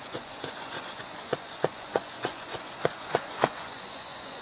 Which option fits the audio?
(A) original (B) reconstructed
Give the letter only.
B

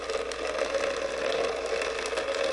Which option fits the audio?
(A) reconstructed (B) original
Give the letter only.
B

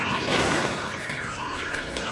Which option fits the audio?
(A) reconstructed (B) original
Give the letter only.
A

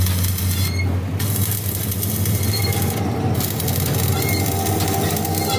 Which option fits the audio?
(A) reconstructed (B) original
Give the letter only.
B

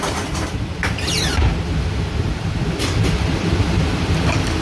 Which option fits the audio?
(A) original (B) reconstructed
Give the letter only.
B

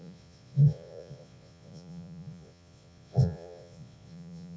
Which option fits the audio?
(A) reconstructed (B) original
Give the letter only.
A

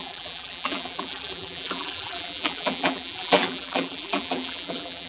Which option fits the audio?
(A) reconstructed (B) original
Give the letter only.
A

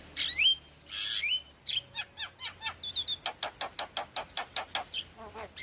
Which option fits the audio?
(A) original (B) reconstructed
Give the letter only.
A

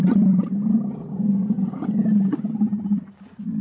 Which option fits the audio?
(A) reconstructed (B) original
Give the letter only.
B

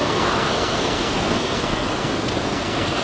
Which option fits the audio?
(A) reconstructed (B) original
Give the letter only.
A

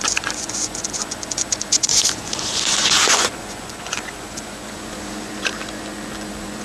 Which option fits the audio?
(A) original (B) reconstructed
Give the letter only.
B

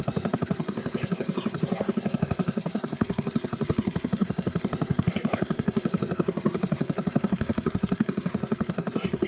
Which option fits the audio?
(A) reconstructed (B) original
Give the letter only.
A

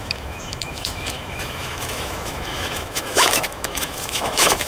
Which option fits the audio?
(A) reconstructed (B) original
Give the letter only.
A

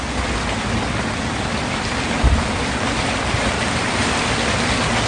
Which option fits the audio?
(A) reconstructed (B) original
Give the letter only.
B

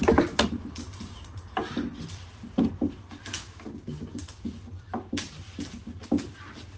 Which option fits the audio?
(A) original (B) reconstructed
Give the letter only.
B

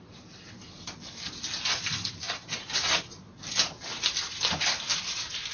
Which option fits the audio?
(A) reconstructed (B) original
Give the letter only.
B